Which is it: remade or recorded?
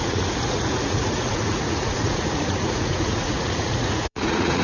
remade